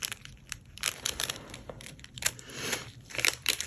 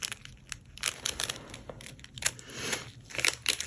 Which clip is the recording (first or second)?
second